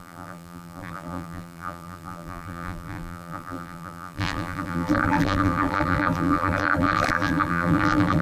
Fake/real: fake